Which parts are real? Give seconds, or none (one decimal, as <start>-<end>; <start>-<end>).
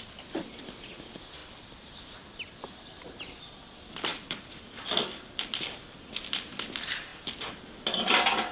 0.0-1.4; 2.8-4.1; 5.4-8.5